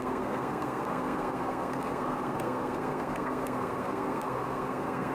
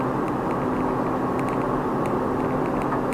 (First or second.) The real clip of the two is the second